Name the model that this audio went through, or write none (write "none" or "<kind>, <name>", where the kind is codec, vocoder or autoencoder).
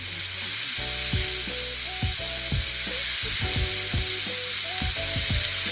none